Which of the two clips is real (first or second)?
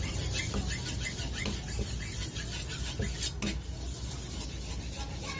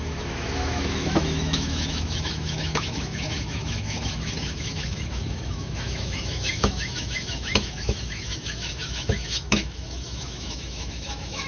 first